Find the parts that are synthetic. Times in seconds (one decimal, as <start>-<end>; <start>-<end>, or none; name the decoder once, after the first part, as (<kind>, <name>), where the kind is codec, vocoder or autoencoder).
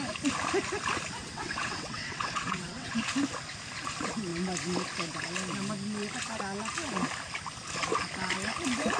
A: 1.2-2.9 (vocoder, WaveNeXt)